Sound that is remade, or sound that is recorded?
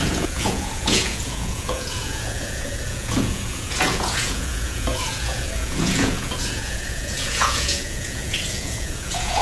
remade